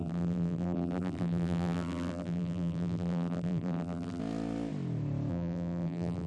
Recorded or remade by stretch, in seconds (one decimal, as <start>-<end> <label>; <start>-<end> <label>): 0.0-4.2 remade; 4.2-5.3 recorded; 5.3-6.3 remade